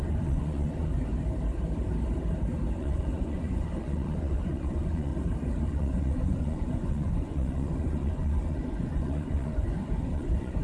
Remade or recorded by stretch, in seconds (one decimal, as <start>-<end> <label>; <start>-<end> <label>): 0.0-1.1 remade; 1.1-2.8 recorded; 2.8-5.1 remade; 5.1-5.6 recorded; 5.6-10.6 remade